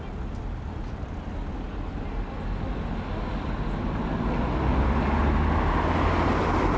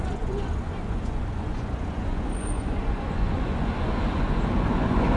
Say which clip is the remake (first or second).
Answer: second